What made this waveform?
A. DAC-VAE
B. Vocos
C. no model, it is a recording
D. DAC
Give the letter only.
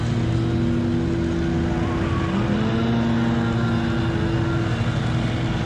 C